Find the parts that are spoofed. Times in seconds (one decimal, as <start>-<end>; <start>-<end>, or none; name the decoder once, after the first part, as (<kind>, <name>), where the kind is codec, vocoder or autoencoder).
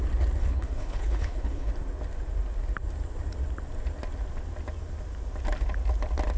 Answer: 0.4-1.7 (codec, HILCodec)